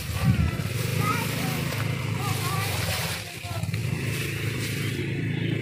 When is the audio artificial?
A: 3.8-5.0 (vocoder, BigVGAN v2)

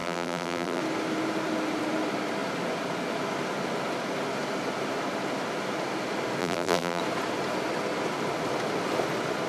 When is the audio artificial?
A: 0.0-0.8 (vocoder, BigVGAN v2); 6.4-7.0

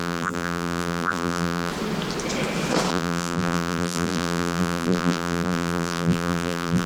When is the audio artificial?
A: 0.0-1.7 (vocoder, BigVGAN v2); 2.9-6.9

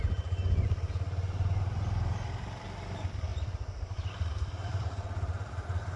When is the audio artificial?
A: 0.0-6.0 (vocoder, BigVGAN v2)

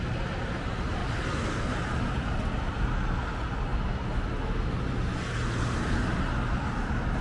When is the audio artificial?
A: 1.0-1.8 (vocoder, BigVGAN v2)

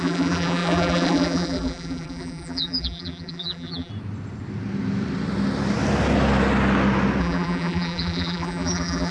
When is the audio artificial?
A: 0.0-3.9 (vocoder, BigVGAN v2); 7.2-9.1